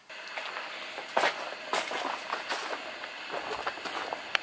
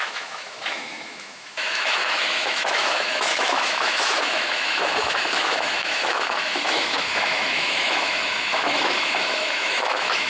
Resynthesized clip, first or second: second